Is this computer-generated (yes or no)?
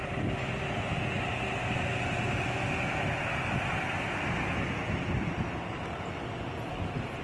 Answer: no